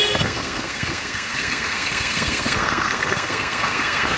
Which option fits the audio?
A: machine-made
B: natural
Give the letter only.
A